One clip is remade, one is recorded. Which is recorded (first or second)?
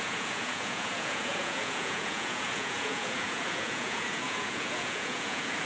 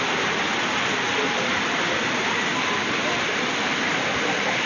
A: second